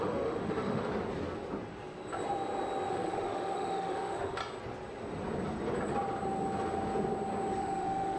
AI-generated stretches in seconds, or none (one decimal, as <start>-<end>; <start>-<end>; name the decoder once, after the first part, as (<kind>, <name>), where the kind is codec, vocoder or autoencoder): 0.0-0.9 (autoencoder, DAC-VAE); 2.9-4.4; 7.6-8.2